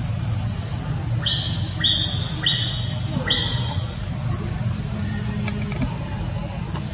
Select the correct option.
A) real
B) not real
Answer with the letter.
A